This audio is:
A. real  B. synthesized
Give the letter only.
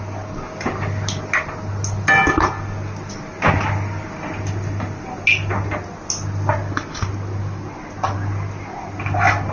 A